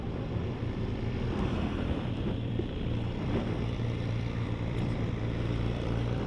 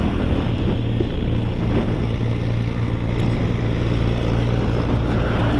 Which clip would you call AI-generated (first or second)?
first